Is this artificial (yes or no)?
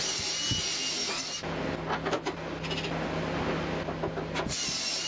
no